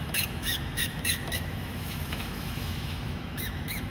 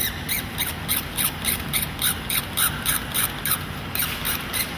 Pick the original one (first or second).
second